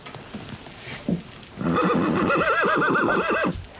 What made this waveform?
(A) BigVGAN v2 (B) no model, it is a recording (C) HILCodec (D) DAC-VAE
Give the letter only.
B